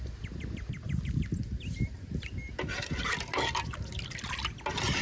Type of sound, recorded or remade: recorded